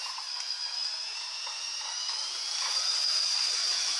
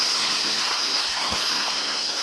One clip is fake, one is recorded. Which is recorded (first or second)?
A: first